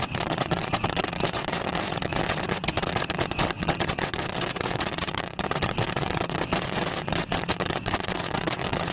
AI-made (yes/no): yes